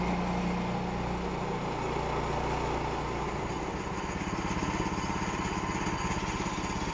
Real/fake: real